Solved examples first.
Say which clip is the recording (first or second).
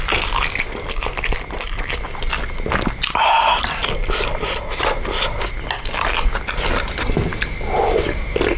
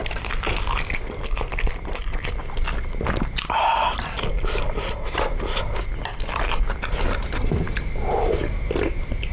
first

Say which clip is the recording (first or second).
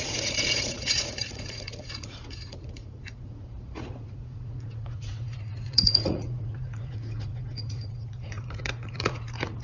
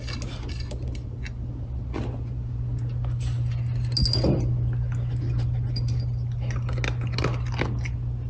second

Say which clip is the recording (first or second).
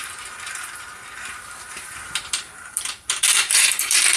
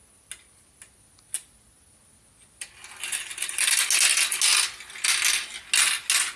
second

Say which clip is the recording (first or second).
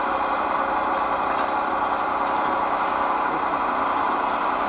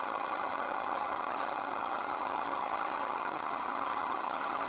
first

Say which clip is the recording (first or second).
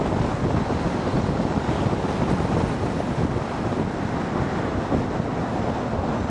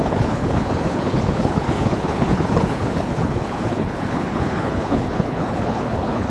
first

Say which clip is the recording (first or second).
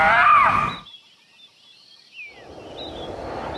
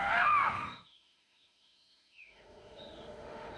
first